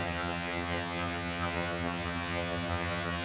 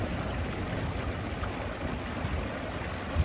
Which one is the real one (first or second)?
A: second